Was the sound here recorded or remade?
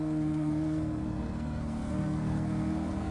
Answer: remade